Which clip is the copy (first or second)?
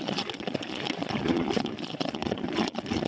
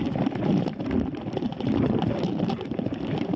first